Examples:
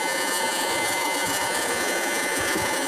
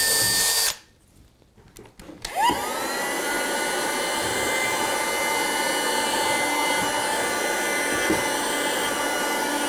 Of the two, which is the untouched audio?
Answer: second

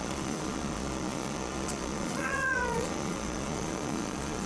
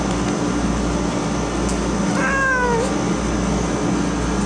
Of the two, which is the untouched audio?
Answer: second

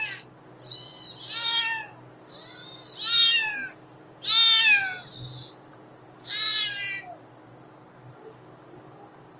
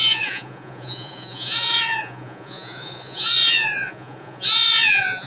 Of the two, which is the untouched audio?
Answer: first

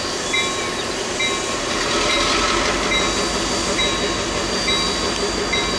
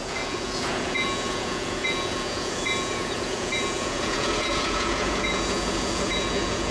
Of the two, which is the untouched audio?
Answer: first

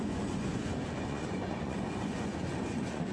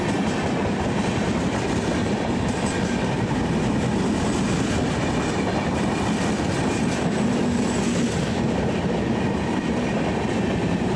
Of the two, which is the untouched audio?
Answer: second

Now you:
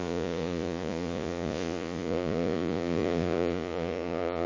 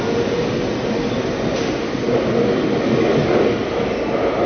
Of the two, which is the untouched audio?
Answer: second